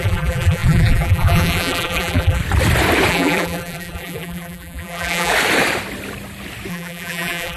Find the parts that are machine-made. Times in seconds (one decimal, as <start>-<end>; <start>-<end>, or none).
0.0-2.4; 3.1-5.3; 6.7-7.6